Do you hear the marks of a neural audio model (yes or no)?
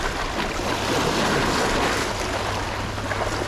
no